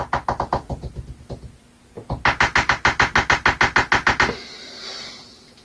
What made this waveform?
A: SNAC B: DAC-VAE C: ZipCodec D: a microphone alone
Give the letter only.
D